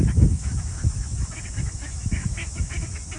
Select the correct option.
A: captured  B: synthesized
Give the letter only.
B